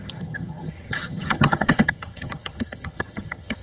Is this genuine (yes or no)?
no